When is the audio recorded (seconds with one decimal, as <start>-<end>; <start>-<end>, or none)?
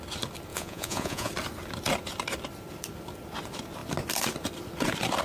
0.0-0.5; 1.3-5.2